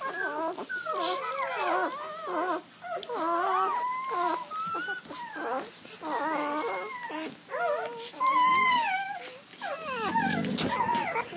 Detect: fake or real real